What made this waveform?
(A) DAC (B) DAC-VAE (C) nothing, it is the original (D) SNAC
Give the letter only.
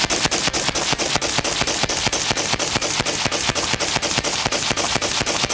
C